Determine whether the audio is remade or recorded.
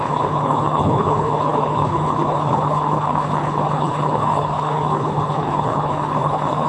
remade